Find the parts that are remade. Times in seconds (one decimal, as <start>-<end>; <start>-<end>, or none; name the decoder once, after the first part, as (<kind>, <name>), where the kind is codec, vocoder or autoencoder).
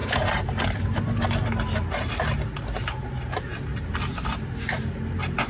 none